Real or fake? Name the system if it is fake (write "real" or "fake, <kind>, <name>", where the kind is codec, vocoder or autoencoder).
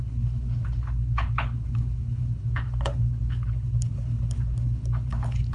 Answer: fake, codec, HILCodec